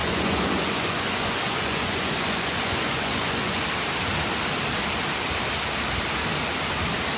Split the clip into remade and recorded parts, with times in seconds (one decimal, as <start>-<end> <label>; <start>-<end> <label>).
0.0-3.6 remade; 3.6-7.2 recorded